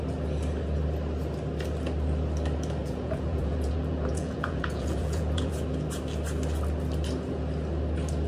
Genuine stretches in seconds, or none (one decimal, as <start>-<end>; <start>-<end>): 0.0-2.8; 5.5-8.3